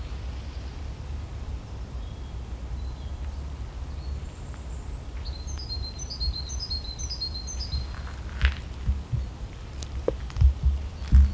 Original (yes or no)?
yes